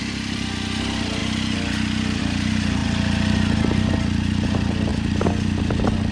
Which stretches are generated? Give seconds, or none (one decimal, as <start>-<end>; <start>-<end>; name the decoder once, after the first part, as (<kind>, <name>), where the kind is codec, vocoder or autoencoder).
none